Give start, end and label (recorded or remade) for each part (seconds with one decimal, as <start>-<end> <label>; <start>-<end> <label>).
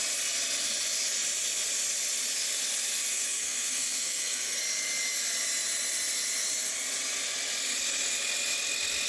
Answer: 0.0-3.1 recorded; 3.1-4.6 remade; 4.6-9.1 recorded